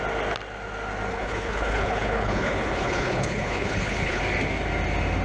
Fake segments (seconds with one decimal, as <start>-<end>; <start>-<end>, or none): 1.1-4.2